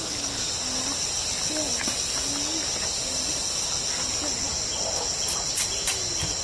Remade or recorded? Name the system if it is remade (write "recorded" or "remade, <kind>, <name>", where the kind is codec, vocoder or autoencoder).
recorded